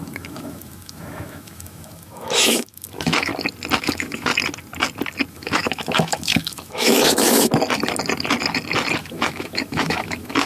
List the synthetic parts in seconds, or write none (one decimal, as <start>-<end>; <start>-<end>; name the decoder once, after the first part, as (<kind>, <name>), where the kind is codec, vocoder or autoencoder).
0.0-3.3 (autoencoder, DAC-VAE); 3.8-4.3; 5.3-7.5; 9.0-10.5